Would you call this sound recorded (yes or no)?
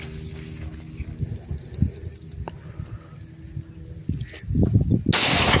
yes